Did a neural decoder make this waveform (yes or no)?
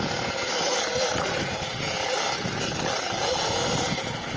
no